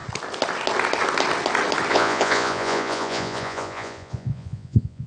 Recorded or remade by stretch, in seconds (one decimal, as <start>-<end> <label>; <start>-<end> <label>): 0.0-1.9 recorded; 1.9-5.1 remade